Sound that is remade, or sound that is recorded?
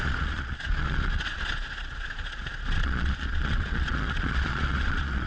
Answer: remade